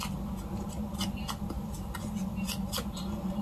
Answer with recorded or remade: recorded